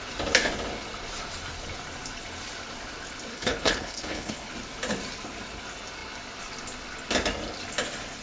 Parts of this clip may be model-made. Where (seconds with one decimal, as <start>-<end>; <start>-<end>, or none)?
3.3-4.5